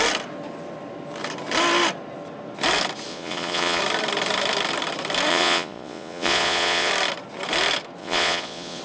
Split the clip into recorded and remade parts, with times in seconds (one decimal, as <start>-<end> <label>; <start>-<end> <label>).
0.0-3.1 recorded; 3.1-3.8 remade; 3.8-5.3 recorded; 5.3-6.9 remade; 6.9-8.0 recorded; 8.0-8.8 remade